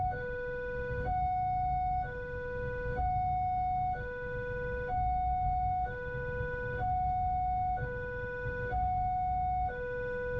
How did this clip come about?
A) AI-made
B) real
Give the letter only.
A